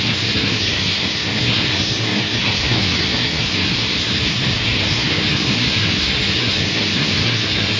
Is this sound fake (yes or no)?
yes